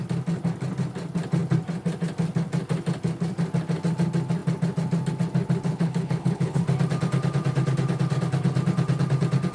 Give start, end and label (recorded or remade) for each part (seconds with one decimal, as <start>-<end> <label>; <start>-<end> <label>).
0.0-5.7 recorded; 5.7-6.6 remade; 6.6-9.5 recorded